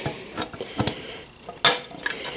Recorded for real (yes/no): yes